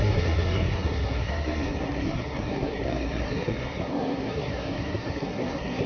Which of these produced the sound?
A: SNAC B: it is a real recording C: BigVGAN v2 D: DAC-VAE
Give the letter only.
A